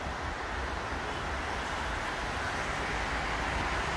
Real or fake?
real